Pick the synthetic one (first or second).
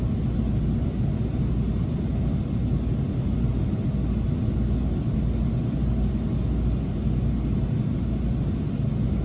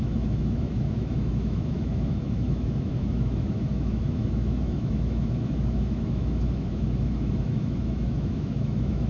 second